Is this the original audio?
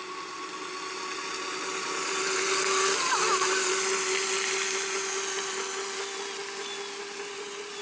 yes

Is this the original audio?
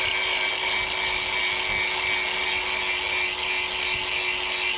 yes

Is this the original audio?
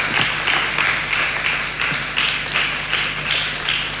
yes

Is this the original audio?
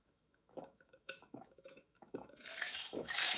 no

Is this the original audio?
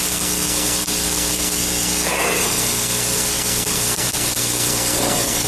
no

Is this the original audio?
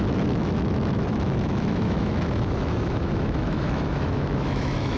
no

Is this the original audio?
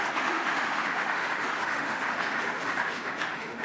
no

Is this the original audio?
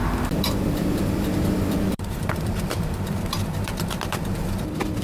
no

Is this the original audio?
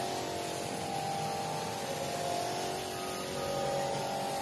yes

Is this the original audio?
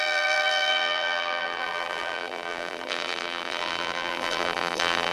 no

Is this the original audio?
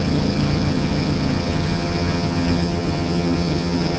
no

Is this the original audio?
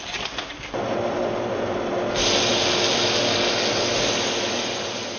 yes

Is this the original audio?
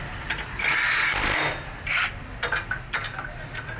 yes